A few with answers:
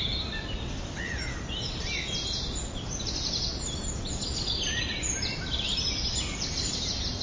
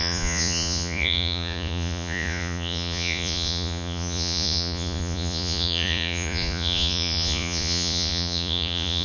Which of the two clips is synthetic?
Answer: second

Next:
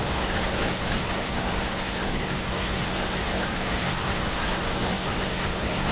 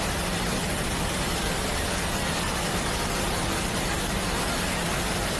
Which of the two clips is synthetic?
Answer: first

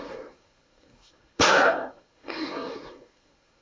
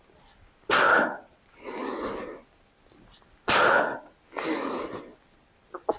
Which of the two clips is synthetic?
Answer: first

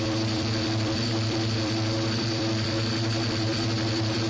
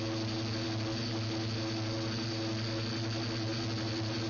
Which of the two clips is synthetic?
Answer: first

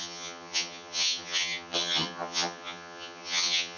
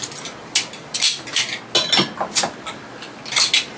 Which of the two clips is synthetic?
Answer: first